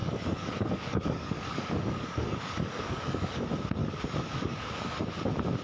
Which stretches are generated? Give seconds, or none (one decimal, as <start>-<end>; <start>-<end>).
0.0-3.4; 3.8-5.0